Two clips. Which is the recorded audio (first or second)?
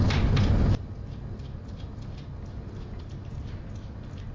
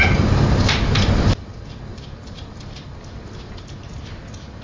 first